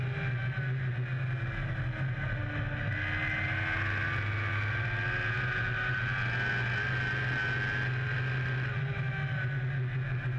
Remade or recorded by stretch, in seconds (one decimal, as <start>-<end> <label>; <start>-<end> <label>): 0.0-10.4 recorded